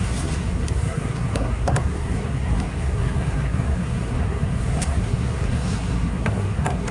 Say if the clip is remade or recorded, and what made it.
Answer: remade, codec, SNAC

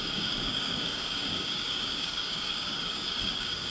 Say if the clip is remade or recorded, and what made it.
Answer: remade, codec, DAC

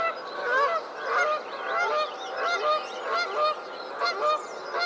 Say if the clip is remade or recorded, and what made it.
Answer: recorded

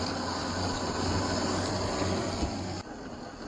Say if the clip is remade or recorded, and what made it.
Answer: recorded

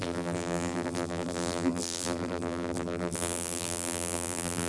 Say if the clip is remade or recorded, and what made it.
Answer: remade, vocoder, BigVGAN v2